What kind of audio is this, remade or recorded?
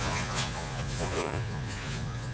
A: remade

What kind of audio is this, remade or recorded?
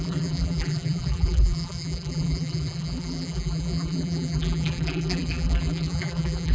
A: remade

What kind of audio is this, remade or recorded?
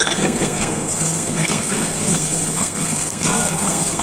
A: remade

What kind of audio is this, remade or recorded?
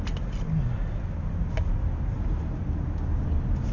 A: recorded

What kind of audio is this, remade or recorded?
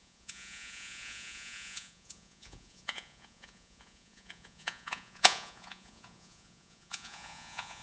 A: remade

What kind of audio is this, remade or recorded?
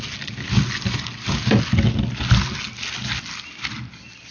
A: recorded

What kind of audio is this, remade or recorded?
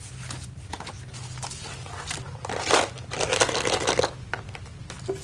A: recorded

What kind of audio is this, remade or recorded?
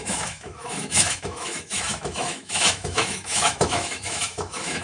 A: remade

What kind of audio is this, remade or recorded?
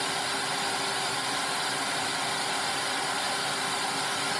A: recorded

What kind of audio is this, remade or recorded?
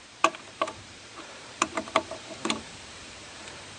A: remade